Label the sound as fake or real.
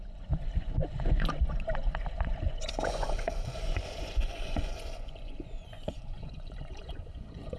fake